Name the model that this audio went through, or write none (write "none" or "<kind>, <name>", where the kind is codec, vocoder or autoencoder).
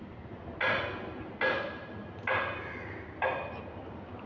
none